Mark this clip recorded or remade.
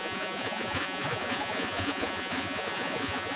remade